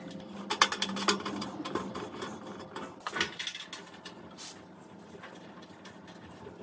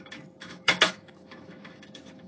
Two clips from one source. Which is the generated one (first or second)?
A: second